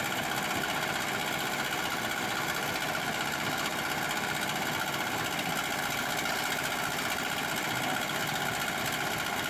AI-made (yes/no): no